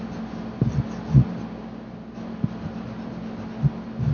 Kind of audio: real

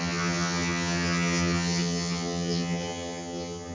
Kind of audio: fake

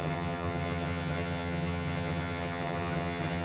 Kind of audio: fake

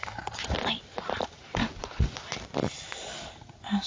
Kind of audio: real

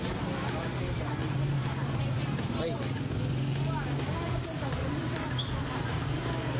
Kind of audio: real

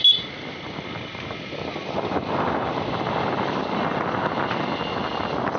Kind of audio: real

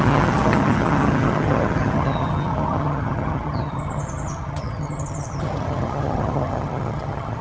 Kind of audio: fake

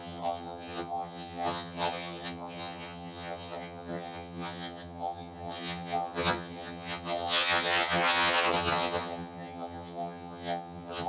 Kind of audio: fake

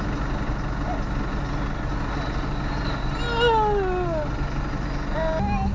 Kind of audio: real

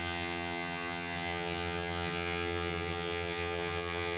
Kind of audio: fake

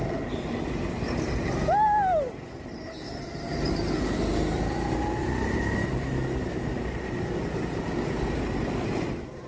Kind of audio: real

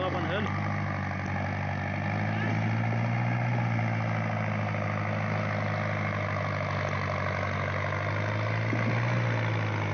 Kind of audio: real